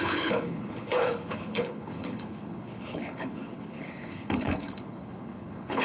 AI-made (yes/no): yes